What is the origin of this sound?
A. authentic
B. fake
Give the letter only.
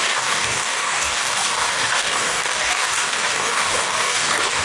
B